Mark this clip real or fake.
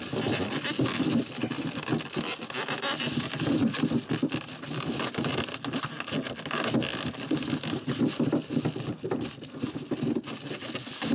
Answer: real